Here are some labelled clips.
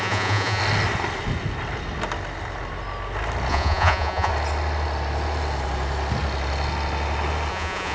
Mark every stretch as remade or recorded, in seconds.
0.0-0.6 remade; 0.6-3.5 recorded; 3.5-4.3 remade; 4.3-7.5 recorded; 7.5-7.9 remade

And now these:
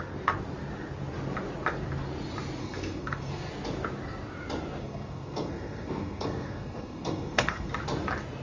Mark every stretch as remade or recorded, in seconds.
0.0-2.6 recorded; 2.6-3.5 remade; 3.5-4.8 recorded; 4.8-7.7 remade; 7.7-8.4 recorded

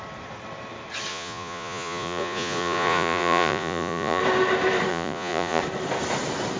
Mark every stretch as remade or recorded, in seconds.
0.0-1.1 recorded; 1.1-4.2 remade; 4.2-4.9 recorded; 4.9-5.6 remade; 5.6-6.6 recorded

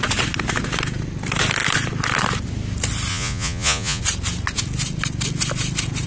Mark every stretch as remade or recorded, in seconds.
0.0-3.1 recorded; 3.1-4.0 remade; 4.0-6.1 recorded

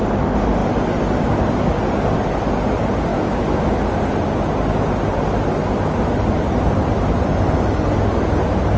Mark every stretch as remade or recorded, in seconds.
0.0-3.1 recorded; 3.1-3.7 remade; 3.7-8.8 recorded

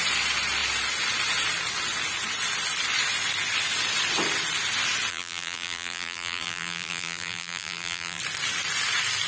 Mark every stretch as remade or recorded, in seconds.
0.0-5.1 recorded; 5.1-8.2 remade; 8.2-9.3 recorded

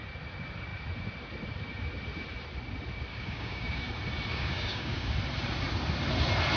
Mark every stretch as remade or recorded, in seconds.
0.0-3.1 recorded; 3.1-3.8 remade; 3.8-4.3 recorded; 4.3-5.1 remade; 5.1-6.6 recorded

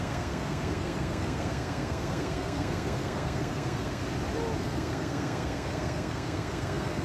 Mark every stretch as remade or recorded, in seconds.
0.0-4.0 remade; 4.0-4.6 recorded; 4.6-7.0 remade